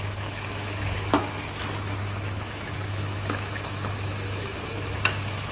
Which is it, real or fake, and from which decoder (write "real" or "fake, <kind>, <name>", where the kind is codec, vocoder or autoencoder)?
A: fake, autoencoder, DAC-VAE